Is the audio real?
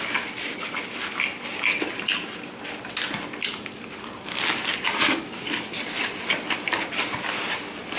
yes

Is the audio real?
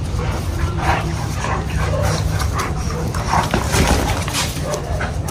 no